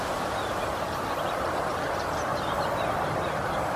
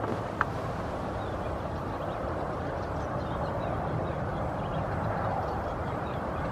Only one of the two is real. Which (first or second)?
first